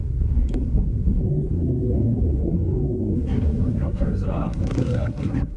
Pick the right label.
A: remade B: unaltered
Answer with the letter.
A